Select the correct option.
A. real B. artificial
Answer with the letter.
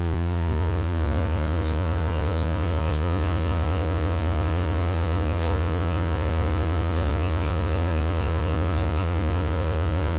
B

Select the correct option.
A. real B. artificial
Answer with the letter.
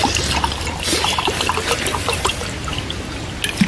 A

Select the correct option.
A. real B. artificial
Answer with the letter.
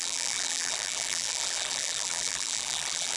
B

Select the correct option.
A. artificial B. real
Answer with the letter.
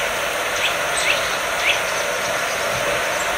B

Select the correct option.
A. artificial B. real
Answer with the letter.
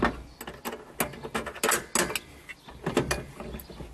B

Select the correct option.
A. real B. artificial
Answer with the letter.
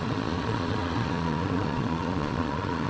B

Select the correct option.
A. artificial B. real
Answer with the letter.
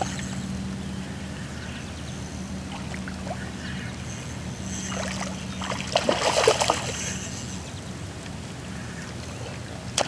B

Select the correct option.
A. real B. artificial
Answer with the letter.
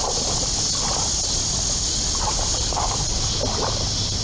A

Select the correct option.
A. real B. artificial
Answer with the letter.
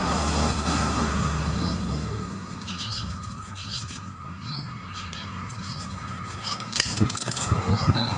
B